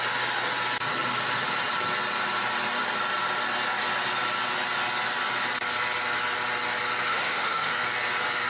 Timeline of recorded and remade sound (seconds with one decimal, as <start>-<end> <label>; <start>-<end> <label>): 0.0-7.1 recorded; 7.1-7.7 remade; 7.7-8.5 recorded